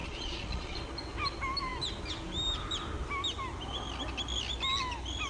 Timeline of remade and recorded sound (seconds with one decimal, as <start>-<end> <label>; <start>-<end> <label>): 0.0-0.8 remade; 0.8-5.3 recorded